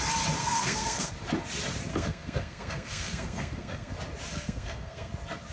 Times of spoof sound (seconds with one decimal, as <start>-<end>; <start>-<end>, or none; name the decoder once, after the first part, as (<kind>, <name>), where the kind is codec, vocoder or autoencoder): 0.4-1.1 (codec, SNAC); 1.9-3.9; 4.3-5.1